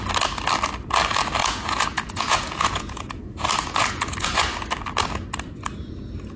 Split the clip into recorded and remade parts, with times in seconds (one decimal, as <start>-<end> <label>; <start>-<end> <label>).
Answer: 0.0-1.4 recorded; 1.4-3.4 remade; 3.4-3.8 recorded; 3.8-4.4 remade; 4.4-6.4 recorded